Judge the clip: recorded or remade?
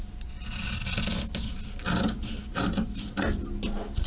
recorded